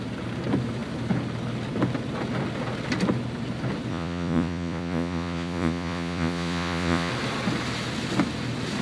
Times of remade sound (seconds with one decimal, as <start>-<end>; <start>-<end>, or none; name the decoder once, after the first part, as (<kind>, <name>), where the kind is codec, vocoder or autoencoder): 3.9-7.1 (vocoder, Vocos)